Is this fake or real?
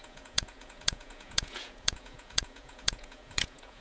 fake